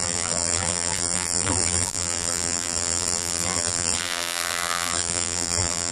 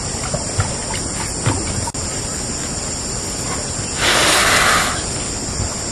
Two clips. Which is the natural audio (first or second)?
second